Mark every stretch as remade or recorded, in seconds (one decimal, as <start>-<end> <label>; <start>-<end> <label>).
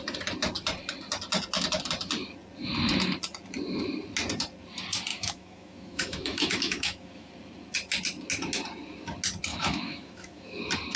0.0-5.1 recorded; 5.1-7.3 remade; 7.3-9.5 recorded; 9.5-10.6 remade; 10.6-11.0 recorded